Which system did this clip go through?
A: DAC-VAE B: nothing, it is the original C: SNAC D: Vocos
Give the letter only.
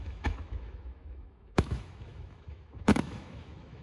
A